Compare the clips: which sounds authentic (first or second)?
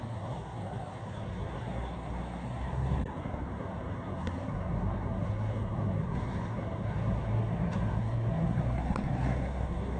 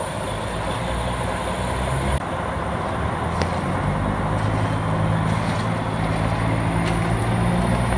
second